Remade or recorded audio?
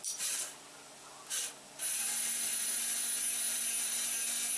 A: recorded